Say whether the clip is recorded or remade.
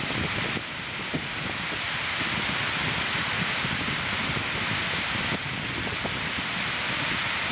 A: recorded